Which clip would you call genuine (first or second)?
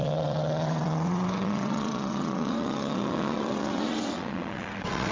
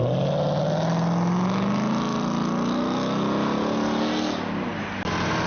second